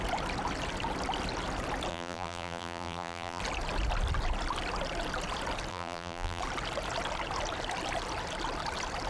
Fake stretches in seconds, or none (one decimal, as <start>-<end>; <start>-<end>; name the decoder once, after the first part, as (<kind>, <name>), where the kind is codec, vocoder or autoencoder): 1.9-3.4 (vocoder, BigVGAN v2); 5.7-6.4